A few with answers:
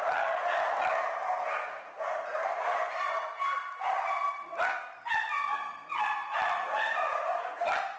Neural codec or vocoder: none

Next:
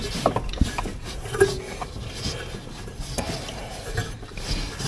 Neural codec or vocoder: none